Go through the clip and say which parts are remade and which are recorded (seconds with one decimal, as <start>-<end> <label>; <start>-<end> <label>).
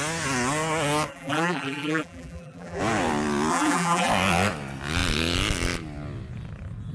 0.0-1.1 recorded; 1.1-2.8 remade; 2.8-3.5 recorded; 3.5-4.1 remade; 4.1-6.9 recorded